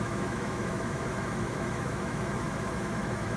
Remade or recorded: remade